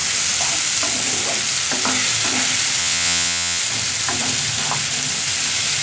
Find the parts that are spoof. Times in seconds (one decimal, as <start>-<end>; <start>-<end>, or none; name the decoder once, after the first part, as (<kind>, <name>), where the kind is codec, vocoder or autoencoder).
2.8-3.6 (vocoder, WaveNeXt)